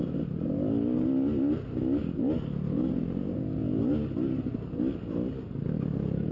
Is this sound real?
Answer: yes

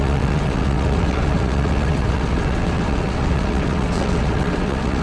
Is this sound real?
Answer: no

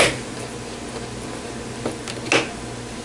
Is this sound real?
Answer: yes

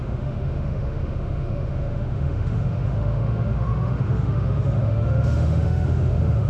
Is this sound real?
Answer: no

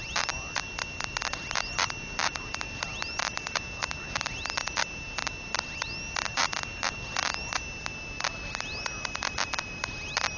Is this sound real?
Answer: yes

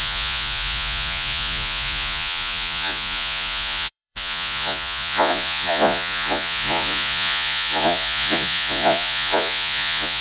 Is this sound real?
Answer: no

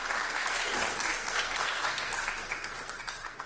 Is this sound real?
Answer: no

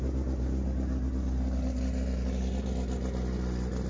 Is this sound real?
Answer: yes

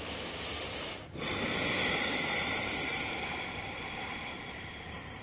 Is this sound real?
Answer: yes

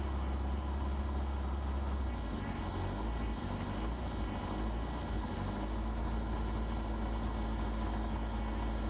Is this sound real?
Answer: yes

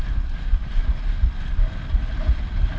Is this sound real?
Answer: yes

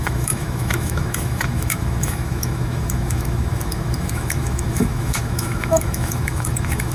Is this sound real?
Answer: no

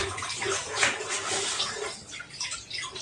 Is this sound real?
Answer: yes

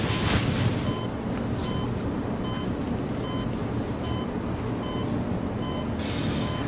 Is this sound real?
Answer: yes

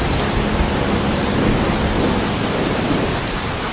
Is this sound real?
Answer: yes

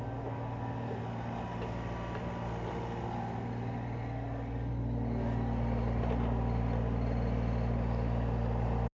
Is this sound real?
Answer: yes